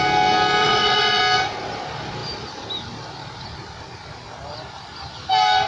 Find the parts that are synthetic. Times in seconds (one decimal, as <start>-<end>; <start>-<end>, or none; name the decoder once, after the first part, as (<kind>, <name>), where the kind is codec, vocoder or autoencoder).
0.6-1.2 (vocoder, WaveNeXt)